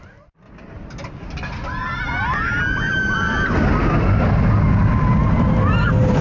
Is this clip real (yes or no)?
yes